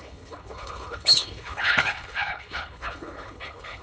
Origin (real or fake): fake